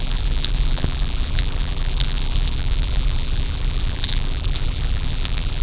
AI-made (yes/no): yes